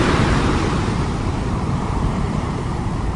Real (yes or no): no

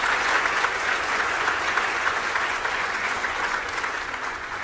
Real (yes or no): no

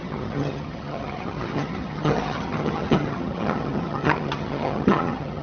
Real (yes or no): no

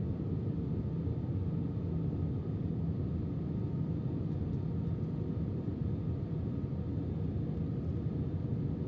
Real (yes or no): yes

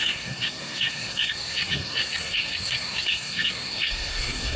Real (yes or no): no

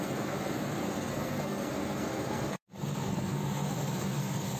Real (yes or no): no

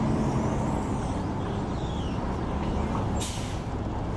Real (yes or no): yes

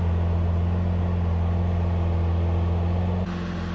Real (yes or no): yes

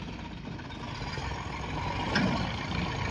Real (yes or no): yes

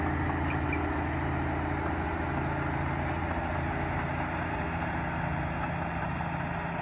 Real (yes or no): yes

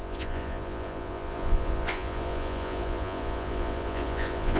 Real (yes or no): no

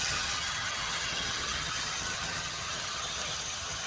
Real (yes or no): no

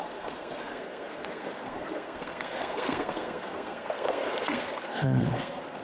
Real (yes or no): no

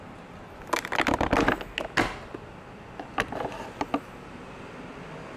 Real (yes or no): yes